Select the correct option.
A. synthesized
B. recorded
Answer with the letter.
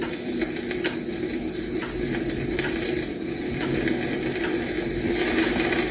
B